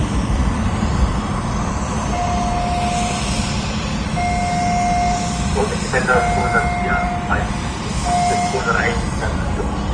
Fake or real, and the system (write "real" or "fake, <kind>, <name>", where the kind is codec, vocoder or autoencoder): real